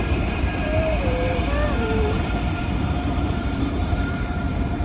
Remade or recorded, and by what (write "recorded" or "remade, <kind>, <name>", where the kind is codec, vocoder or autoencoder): remade, vocoder, BigVGAN v2